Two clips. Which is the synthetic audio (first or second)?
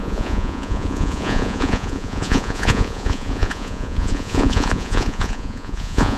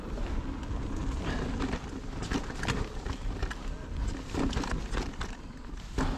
first